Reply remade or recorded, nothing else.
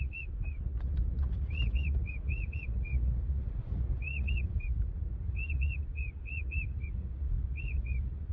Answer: remade